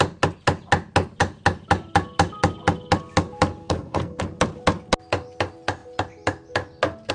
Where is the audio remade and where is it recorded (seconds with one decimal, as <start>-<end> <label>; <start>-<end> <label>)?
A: 0.0-3.6 recorded; 3.6-4.2 remade; 4.2-7.1 recorded